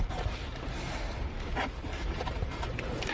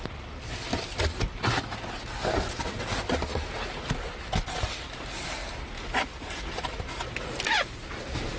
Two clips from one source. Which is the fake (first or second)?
first